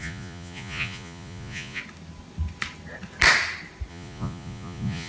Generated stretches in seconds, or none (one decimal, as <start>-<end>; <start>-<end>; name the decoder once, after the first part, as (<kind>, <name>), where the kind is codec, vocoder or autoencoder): 0.0-1.8 (vocoder, Vocos); 3.9-5.1